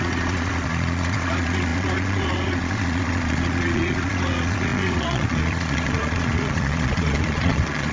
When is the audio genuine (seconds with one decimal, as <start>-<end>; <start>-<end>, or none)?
none